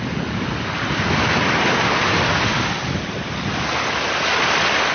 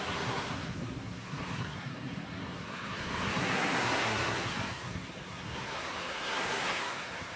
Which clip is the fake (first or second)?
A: second